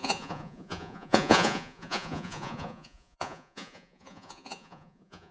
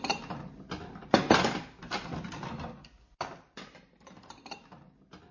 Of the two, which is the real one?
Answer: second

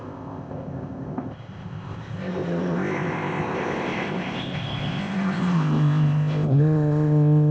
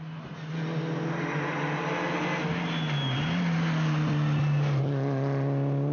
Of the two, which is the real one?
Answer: second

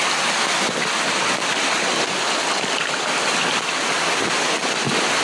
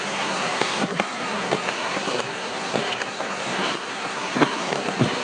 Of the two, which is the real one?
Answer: first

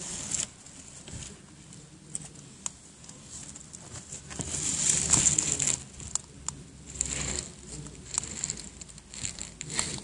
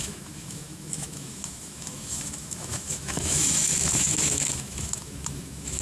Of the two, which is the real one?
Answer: first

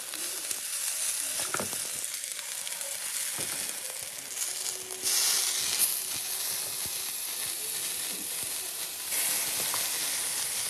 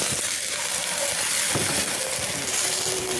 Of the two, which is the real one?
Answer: first